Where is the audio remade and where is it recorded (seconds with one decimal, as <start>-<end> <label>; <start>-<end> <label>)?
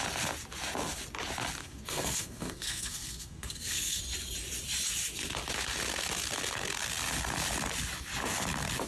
0.0-1.6 recorded; 1.6-4.0 remade; 4.0-8.9 recorded